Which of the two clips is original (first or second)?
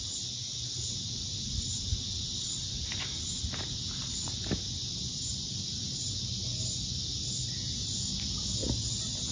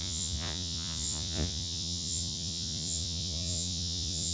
first